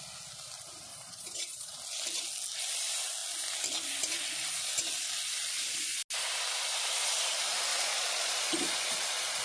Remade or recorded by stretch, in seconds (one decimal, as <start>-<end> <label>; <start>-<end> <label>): 0.0-0.9 recorded; 0.9-1.8 remade; 1.8-7.7 recorded; 7.7-9.4 remade